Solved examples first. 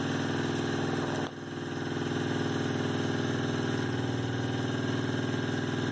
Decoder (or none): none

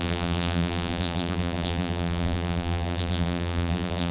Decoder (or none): vocoder, BigVGAN v2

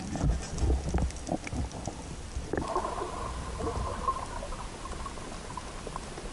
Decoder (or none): none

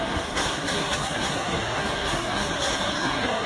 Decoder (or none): codec, SNAC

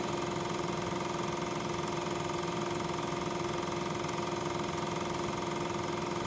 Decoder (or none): none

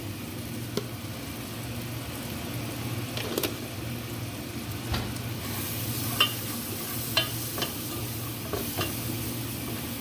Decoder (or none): none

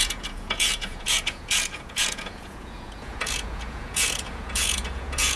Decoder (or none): vocoder, Vocos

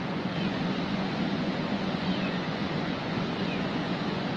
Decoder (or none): vocoder, Vocos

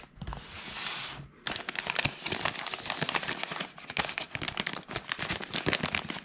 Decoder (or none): none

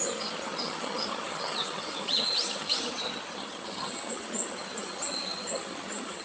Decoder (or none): vocoder, HiFi-GAN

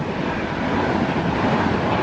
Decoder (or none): none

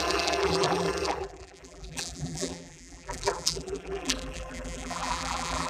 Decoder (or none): vocoder, BigVGAN v2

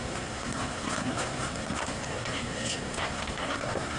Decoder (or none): codec, SNAC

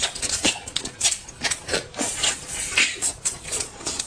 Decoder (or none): vocoder, Vocos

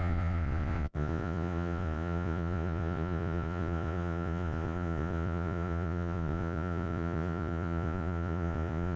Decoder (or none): vocoder, Vocos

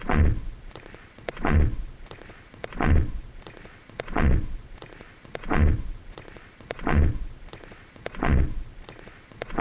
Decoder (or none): vocoder, Vocos